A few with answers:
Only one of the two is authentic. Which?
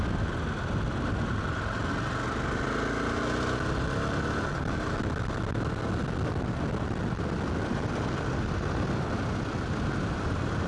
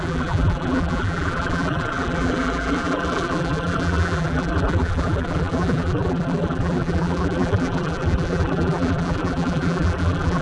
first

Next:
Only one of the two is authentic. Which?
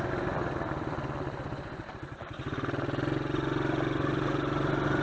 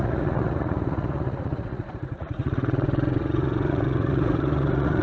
first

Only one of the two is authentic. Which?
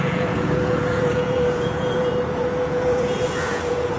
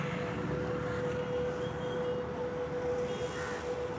second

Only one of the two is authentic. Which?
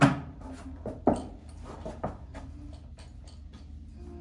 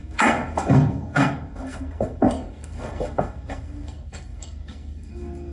first